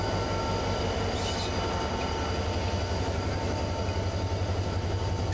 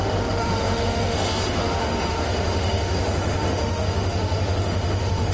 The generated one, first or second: second